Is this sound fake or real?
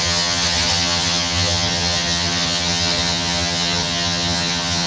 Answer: fake